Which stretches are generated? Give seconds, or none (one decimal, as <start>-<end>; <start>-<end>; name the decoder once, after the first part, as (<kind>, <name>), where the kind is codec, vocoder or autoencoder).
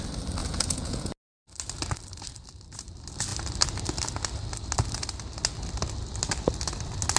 0.4-1.1 (vocoder, Vocos)